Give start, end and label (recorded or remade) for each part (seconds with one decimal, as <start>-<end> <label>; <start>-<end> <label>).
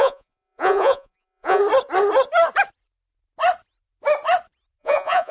0.0-1.6 remade; 1.6-4.8 recorded; 4.8-5.3 remade